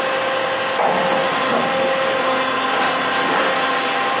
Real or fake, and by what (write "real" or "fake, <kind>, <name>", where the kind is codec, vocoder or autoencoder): real